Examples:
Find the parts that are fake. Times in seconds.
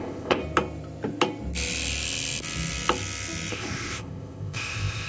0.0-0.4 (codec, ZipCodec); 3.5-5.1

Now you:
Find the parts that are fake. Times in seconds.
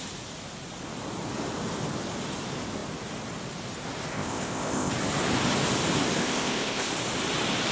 4.1-4.9 (codec, ZipCodec); 6.2-6.9